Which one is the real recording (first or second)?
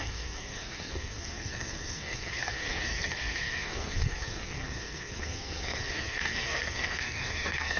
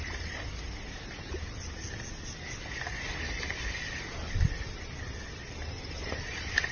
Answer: second